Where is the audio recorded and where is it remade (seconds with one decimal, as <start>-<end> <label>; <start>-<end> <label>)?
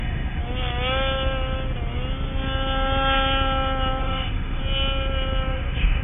0.0-0.4 remade; 0.4-4.0 recorded; 4.0-4.6 remade; 4.6-5.5 recorded; 5.5-6.0 remade